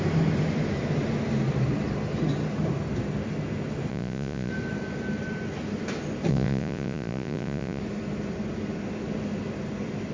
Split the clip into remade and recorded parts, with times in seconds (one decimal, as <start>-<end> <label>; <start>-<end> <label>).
0.0-3.9 recorded; 3.9-4.5 remade; 4.5-6.3 recorded; 6.3-7.8 remade; 7.8-10.1 recorded